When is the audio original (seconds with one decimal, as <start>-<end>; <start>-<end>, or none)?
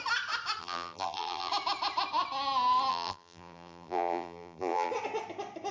0.0-0.6; 1.5-2.9; 4.9-5.7